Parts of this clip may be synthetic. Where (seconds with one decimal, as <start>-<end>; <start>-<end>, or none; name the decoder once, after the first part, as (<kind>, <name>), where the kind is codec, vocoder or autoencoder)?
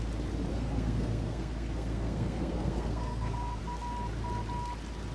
0.5-3.6 (codec, SNAC)